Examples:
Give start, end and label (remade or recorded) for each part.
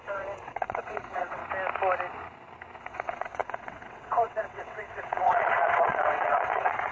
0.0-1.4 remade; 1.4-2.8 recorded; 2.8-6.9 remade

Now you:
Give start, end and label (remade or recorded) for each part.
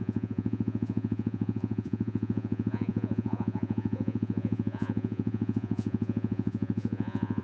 0.0-7.4 remade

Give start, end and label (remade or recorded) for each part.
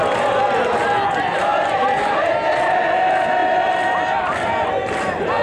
0.0-1.5 recorded; 1.5-2.2 remade; 2.2-5.4 recorded